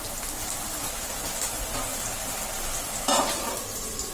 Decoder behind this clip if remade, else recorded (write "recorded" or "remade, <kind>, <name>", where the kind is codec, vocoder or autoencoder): recorded